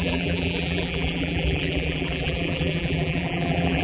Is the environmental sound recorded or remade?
remade